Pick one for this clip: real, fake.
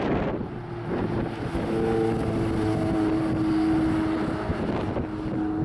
real